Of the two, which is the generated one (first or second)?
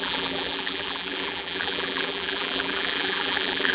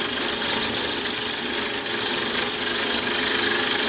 first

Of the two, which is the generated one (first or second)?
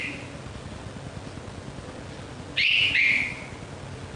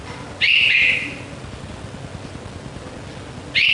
second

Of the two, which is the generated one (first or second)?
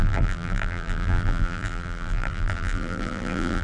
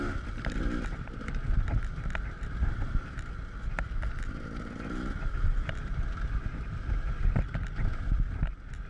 first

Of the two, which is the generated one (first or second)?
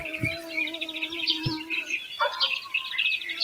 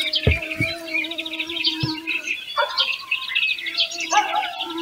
second